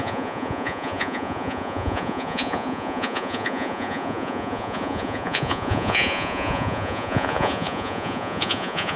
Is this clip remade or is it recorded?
remade